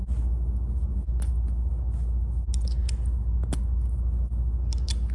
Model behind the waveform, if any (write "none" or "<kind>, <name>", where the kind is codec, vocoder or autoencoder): none